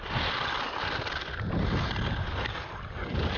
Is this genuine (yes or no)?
yes